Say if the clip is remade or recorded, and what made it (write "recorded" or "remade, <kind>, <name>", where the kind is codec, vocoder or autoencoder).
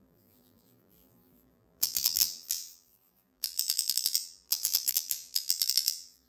remade, vocoder, BigVGAN v2